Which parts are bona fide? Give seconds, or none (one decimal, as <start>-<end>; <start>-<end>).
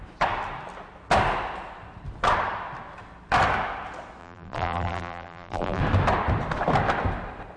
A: 0.0-4.2; 5.8-7.6